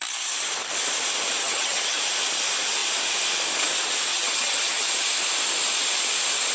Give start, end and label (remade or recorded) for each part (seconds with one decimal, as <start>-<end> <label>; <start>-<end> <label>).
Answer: 0.0-1.4 recorded; 1.4-2.0 remade; 2.0-4.1 recorded; 4.1-4.9 remade; 4.9-6.5 recorded